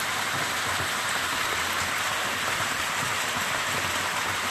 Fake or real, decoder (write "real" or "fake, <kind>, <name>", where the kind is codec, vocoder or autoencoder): fake, vocoder, BigVGAN v2